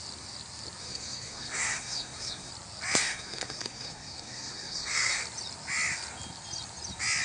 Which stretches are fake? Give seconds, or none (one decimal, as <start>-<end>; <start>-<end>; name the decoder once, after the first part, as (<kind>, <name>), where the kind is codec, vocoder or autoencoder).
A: 0.8-2.5 (codec, SNAC); 3.0-5.2